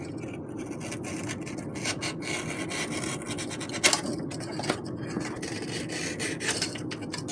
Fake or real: real